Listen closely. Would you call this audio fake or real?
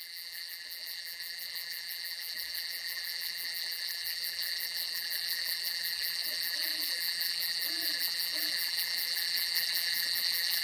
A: fake